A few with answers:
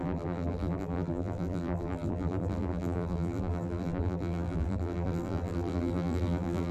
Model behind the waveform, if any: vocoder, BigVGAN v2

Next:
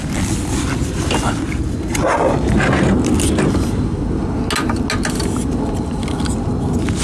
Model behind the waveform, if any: none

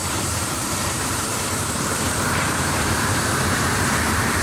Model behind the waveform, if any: vocoder, BigVGAN v2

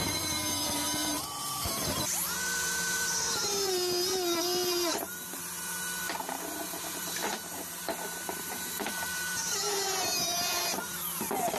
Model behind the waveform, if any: vocoder, BigVGAN v2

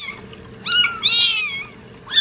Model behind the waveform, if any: none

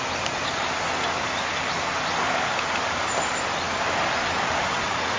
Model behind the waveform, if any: none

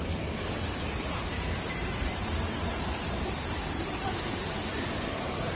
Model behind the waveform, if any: vocoder, BigVGAN v2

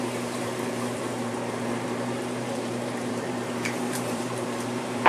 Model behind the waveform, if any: vocoder, BigVGAN v2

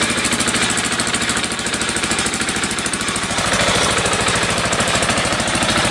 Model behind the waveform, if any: vocoder, BigVGAN v2